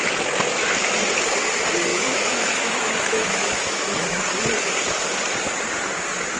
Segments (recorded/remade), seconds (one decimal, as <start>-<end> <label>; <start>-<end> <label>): 0.0-1.9 recorded; 1.9-4.2 remade; 4.2-6.4 recorded